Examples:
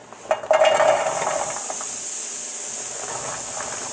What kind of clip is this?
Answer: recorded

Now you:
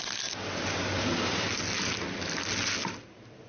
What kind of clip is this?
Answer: recorded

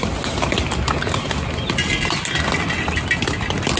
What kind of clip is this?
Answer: recorded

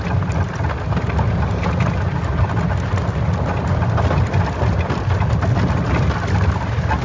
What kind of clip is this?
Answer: recorded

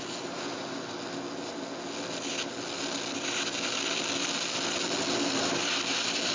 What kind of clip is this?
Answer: recorded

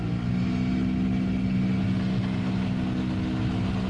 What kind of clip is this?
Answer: recorded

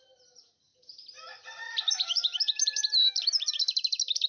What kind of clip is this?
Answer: remade